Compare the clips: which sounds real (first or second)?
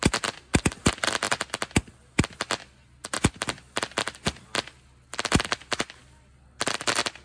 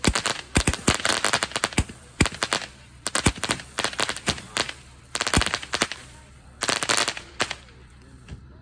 first